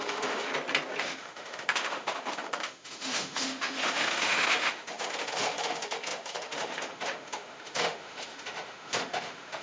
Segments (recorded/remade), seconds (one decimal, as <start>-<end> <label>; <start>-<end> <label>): 0.0-0.5 remade; 0.5-1.0 recorded; 1.0-9.6 remade